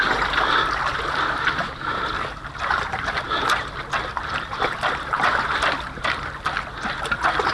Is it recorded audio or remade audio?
recorded